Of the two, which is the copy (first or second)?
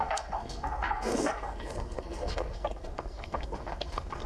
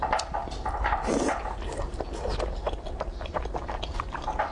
first